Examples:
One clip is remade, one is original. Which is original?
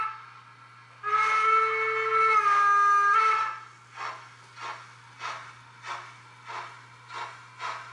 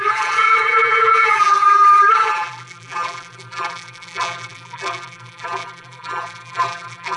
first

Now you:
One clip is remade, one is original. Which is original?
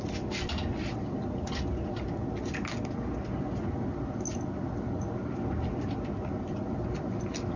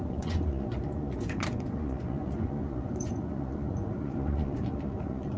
first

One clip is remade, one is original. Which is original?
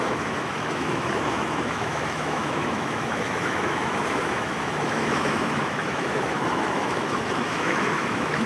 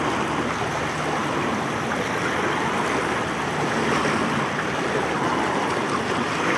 second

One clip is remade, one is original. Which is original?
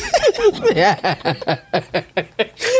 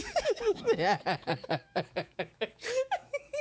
first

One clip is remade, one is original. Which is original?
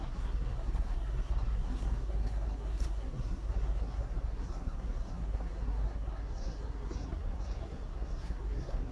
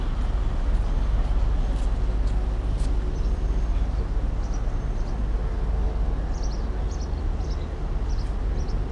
second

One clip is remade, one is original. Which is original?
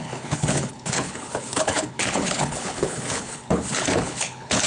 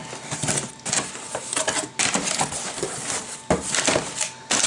second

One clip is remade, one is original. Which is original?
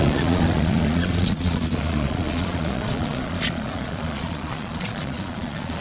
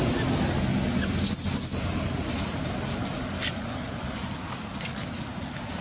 second